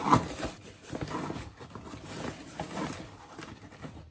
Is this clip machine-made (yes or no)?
no